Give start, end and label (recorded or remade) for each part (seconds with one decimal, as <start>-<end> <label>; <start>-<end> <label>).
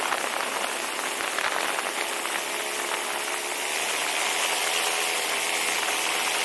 0.0-6.4 recorded